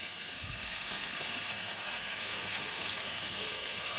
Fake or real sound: fake